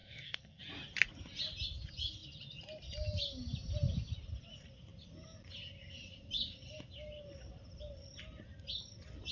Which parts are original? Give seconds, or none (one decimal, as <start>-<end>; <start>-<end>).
0.6-9.3